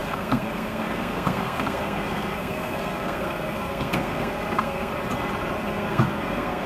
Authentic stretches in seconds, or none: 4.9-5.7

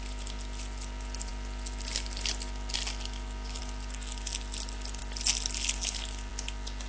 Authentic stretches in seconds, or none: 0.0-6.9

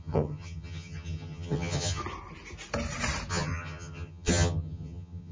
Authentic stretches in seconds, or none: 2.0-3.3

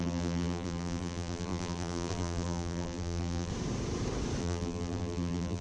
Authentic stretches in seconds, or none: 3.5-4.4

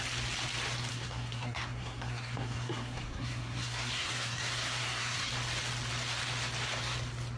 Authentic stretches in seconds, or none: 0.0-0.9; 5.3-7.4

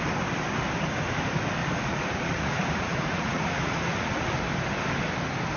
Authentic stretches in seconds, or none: 0.0-1.6; 4.4-5.6